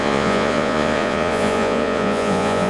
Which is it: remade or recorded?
remade